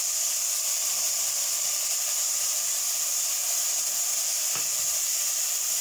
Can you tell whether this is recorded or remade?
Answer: recorded